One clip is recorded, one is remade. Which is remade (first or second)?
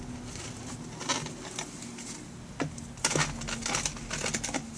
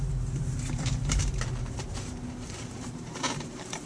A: second